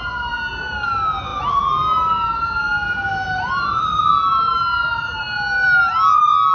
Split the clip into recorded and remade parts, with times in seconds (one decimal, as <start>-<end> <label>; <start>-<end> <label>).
0.0-6.5 recorded